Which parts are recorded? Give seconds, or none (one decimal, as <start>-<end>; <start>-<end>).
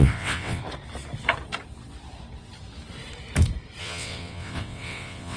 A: 0.6-3.8